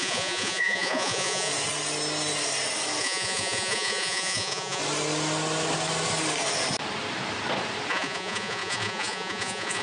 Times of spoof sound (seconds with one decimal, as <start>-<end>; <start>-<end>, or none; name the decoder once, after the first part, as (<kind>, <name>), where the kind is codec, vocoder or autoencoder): 0.0-1.5 (vocoder, Vocos); 3.0-4.8; 7.9-9.8